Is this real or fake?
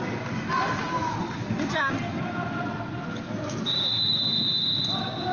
real